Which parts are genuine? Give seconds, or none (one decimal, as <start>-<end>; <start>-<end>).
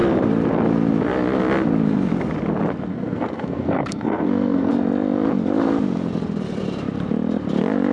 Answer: 0.0-2.9; 4.7-7.9